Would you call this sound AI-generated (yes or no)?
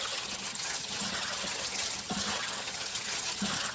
yes